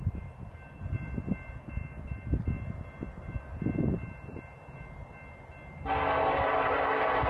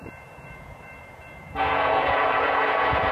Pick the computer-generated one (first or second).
second